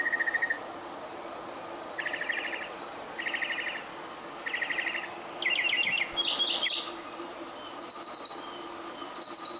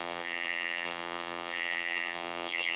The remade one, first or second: second